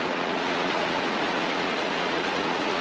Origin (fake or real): fake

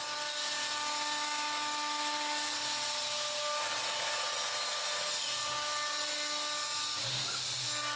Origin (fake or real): real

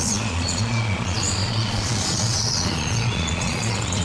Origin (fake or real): fake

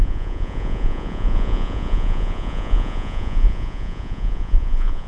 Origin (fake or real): fake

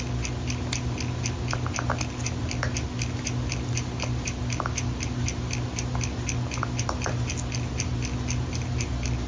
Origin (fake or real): real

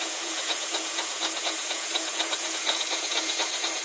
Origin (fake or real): fake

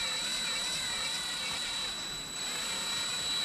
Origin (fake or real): real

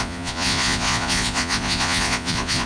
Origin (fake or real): fake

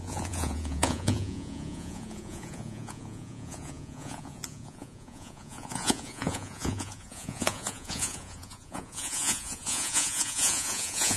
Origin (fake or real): fake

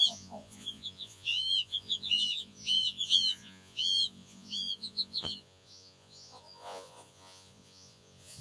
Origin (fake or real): fake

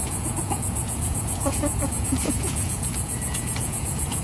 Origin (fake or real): fake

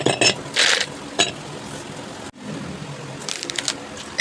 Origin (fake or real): real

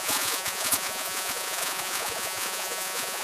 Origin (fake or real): fake